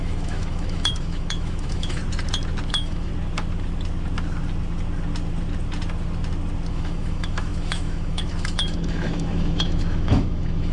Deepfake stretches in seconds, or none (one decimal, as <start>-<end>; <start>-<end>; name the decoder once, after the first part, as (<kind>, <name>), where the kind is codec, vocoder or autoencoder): 0.0-2.0 (autoencoder, DAC-VAE); 2.7-3.1; 6.7-10.7